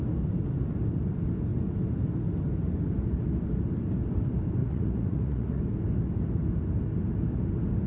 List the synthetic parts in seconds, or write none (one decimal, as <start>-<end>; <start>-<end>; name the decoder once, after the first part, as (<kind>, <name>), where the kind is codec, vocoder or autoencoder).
4.6-5.6 (vocoder, Vocos)